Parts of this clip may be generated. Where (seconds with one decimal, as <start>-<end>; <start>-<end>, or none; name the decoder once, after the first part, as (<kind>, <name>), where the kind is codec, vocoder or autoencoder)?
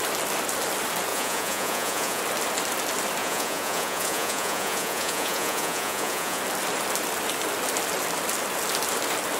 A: 1.1-2.2 (vocoder, Vocos); 3.2-6.4